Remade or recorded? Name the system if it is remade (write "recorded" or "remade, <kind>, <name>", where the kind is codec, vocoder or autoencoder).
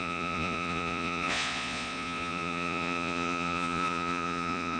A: remade, vocoder, Vocos